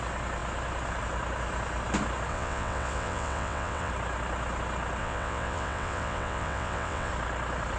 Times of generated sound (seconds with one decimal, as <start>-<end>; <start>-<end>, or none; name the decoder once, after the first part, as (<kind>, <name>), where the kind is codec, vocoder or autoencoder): 2.3-3.9 (vocoder, WaveNeXt); 5.0-7.1